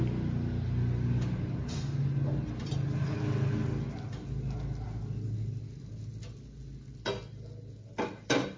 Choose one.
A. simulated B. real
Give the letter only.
B